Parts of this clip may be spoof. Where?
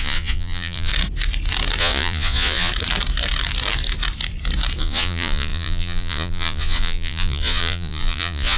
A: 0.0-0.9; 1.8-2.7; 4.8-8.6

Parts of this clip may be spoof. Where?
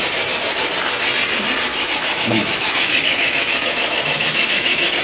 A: 1.7-5.0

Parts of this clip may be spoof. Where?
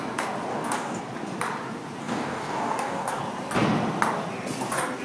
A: 0.5-1.0; 2.0-3.2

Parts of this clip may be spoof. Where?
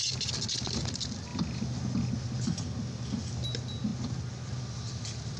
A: none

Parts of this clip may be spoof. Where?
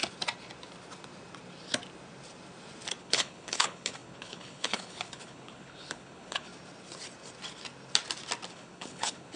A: 3.0-6.5; 8.5-9.4